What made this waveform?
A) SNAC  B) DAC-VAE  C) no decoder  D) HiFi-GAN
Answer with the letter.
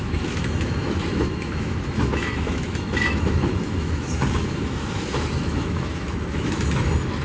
B